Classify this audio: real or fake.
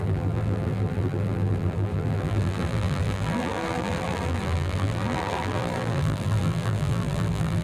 fake